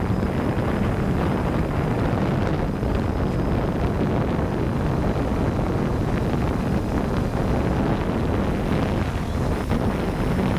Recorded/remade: recorded